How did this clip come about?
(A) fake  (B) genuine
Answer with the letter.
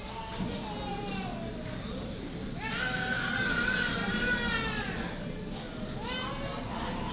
B